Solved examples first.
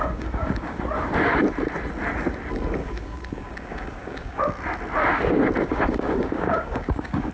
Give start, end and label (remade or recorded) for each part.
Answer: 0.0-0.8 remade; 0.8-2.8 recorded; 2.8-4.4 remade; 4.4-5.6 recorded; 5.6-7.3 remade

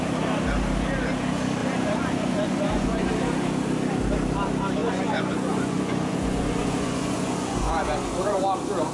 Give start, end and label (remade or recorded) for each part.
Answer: 0.0-1.6 recorded; 1.6-3.1 remade; 3.1-4.8 recorded; 4.8-8.4 remade; 8.4-8.9 recorded

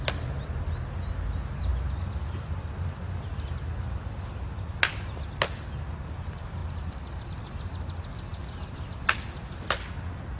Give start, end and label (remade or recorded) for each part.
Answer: 0.0-6.6 recorded; 6.6-7.3 remade; 7.3-10.4 recorded

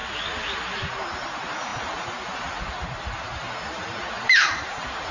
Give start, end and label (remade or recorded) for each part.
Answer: 0.0-0.8 recorded; 0.8-5.1 remade

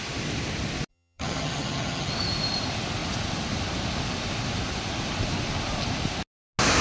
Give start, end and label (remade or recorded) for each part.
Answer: 0.0-0.9 recorded; 0.9-2.1 remade; 2.1-6.8 recorded